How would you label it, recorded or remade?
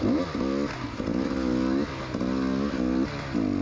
recorded